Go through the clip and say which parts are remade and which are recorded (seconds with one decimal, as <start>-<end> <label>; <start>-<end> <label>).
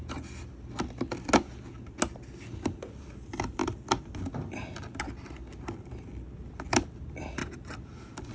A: 0.0-8.3 recorded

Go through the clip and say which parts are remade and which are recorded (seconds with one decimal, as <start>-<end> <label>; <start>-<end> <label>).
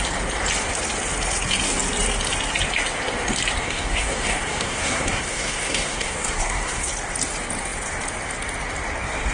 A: 0.0-3.6 recorded; 3.6-6.9 remade; 6.9-9.3 recorded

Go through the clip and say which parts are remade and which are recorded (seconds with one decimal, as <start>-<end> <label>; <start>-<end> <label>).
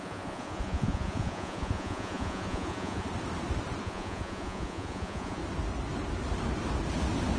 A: 0.0-3.1 remade; 3.1-3.8 recorded; 3.8-5.4 remade; 5.4-7.4 recorded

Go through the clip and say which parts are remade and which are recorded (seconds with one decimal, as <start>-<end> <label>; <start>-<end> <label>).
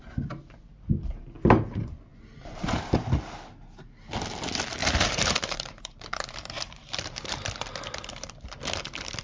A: 0.0-4.8 recorded; 4.8-7.4 remade; 7.4-9.2 recorded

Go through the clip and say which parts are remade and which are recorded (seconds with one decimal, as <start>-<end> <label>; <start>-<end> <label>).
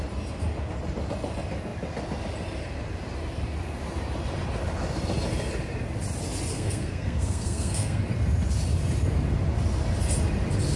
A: 0.0-6.5 recorded; 6.5-8.0 remade; 8.0-10.8 recorded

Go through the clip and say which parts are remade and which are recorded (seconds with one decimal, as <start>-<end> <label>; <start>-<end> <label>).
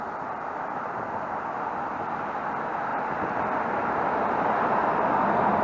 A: 0.0-5.6 recorded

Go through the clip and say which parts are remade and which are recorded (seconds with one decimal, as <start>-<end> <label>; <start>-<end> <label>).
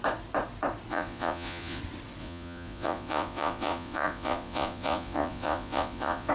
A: 0.0-0.9 recorded; 0.9-1.8 remade; 1.8-2.2 recorded; 2.2-6.3 remade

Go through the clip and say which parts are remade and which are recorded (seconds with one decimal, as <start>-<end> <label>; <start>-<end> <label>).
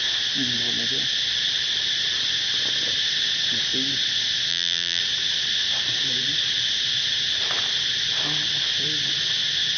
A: 0.0-4.5 recorded; 4.5-5.0 remade; 5.0-9.8 recorded